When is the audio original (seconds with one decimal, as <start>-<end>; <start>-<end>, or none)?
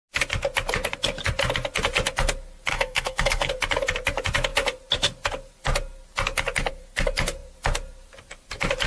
0.0-2.7; 3.5-8.9